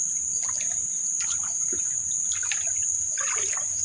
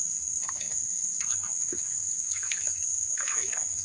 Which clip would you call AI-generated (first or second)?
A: second